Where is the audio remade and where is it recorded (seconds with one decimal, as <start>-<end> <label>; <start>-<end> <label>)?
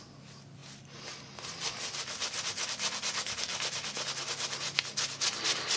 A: 0.0-5.8 recorded